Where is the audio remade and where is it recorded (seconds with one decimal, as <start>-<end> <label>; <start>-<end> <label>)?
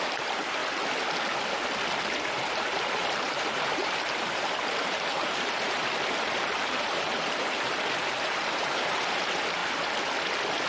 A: 0.0-0.6 remade; 0.6-1.9 recorded; 1.9-9.6 remade; 9.6-10.7 recorded